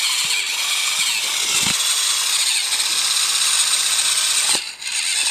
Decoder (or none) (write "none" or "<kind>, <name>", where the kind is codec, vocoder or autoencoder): none